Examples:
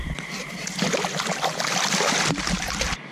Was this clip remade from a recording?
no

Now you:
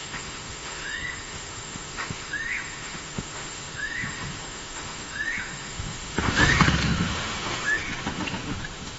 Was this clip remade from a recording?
yes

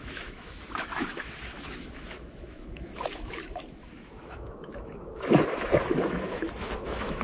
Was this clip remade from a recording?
yes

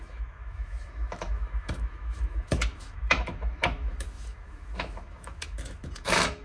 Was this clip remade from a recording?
yes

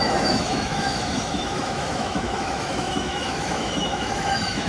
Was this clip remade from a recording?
yes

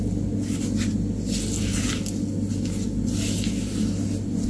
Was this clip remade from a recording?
no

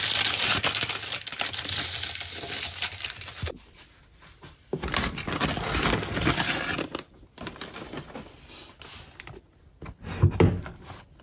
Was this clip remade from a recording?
no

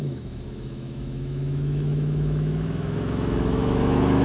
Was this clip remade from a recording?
yes